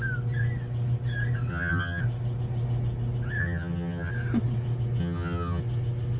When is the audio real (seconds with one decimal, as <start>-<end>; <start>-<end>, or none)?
0.0-1.5; 2.0-3.4; 4.1-5.0; 5.6-6.2